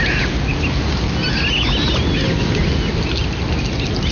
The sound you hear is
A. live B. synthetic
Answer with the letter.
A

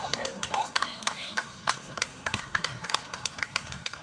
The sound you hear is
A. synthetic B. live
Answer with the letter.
A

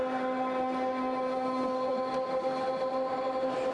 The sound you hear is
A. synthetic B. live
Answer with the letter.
B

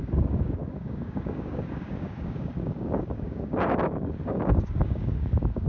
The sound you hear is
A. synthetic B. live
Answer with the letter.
A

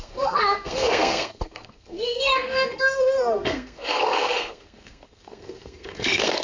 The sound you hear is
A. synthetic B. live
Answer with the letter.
A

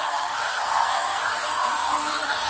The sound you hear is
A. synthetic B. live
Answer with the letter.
A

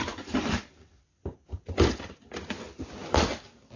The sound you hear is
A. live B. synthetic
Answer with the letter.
A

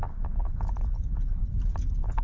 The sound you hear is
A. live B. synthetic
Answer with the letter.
A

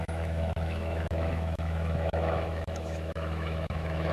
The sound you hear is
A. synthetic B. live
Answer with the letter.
A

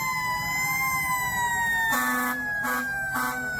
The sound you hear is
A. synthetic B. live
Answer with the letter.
B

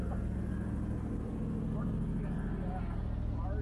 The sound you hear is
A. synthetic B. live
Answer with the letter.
B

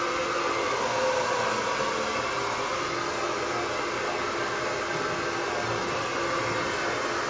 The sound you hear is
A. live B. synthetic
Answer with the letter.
A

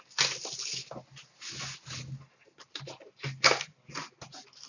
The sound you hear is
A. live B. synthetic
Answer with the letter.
A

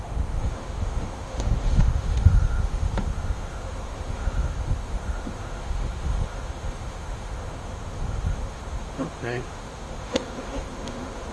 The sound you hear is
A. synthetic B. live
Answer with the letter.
A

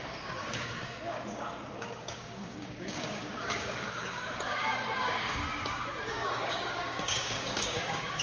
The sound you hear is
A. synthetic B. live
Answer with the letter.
A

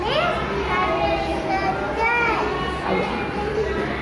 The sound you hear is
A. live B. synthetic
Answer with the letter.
A